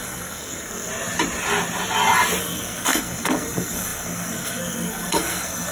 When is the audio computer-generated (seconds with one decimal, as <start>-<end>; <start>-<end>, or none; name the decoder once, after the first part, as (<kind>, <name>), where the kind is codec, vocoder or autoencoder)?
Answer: 0.0-0.9 (codec, SNAC); 2.4-5.7